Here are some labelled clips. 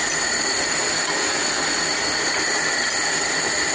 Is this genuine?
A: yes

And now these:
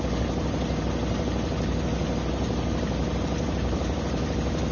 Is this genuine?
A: yes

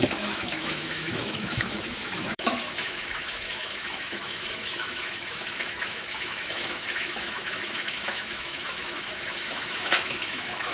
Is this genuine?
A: no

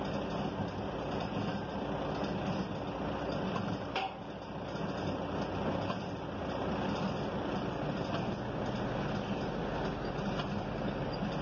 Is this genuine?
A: yes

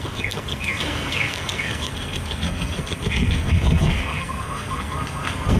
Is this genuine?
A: no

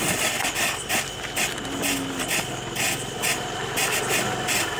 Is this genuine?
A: yes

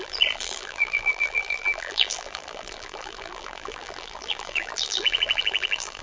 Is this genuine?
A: no